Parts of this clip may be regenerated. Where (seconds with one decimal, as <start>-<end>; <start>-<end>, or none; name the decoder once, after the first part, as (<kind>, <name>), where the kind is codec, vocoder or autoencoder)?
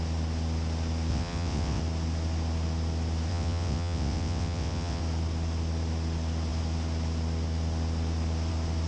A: 1.1-1.8 (vocoder, WaveNeXt); 3.3-5.0